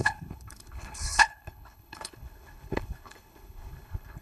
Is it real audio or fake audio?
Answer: fake